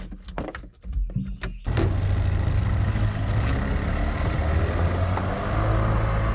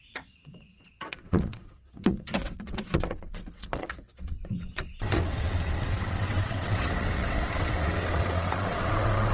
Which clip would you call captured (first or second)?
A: first